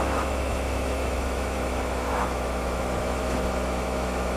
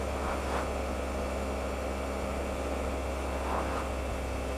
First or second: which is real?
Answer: second